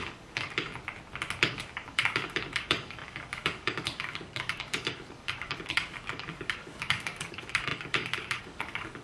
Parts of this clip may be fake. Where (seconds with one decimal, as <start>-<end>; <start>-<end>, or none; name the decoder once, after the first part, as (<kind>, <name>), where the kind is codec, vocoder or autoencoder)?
0.0-0.7 (codec, DAC); 1.4-9.0